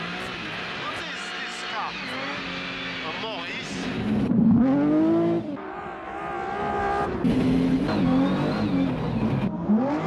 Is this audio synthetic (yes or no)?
no